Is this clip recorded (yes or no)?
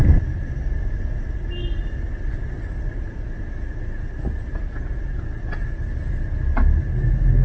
yes